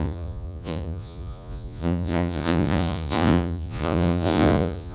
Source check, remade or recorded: remade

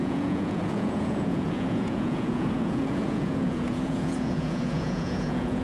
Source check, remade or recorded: remade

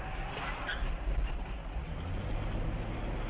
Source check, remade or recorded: recorded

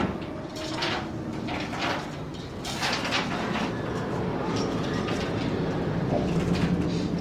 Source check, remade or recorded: recorded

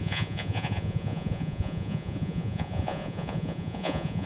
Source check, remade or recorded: remade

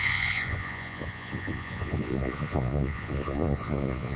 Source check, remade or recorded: remade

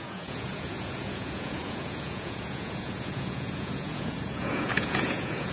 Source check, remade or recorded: remade